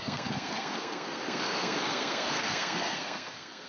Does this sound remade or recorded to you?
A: remade